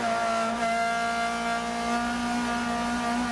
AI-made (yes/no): no